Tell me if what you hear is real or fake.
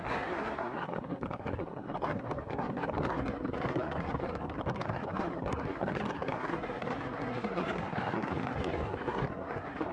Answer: fake